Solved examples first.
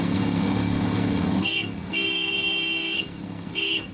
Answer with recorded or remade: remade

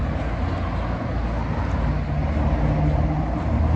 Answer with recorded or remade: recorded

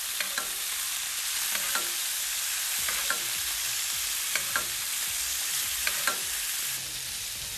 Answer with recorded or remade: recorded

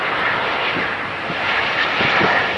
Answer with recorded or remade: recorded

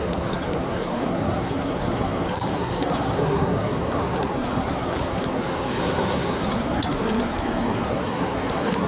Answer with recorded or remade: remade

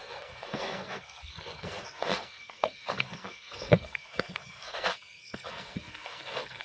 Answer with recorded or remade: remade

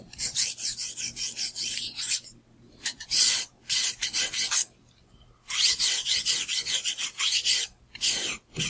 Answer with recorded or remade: recorded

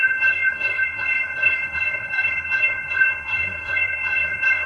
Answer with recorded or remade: remade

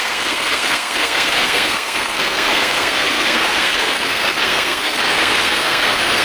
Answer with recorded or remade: remade